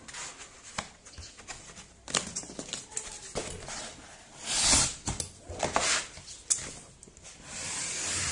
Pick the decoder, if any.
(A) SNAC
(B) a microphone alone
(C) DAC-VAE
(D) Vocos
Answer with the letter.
B